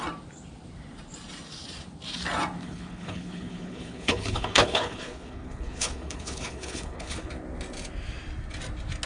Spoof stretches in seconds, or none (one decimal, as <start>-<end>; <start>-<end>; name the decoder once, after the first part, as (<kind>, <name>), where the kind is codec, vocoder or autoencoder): 2.6-7.3 (codec, HILCodec)